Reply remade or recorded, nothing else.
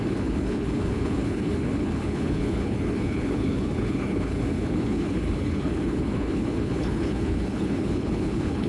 remade